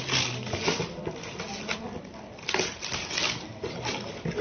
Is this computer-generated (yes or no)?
no